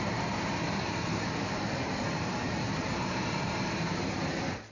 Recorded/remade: remade